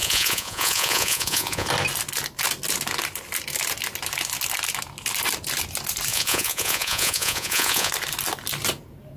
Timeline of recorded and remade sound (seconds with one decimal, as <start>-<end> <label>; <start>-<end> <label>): 0.0-1.7 remade; 1.7-6.1 recorded; 6.1-7.9 remade; 7.9-9.2 recorded